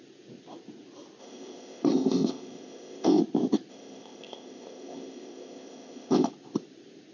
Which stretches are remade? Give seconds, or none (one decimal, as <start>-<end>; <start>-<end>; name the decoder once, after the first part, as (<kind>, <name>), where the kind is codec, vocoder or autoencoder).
1.2-3.2 (codec, ZipCodec); 3.7-6.3